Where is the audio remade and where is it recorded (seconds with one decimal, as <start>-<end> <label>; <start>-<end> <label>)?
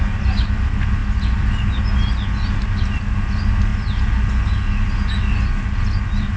0.0-6.4 recorded